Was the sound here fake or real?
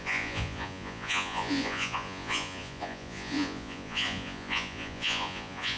fake